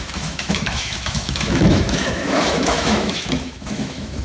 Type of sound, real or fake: fake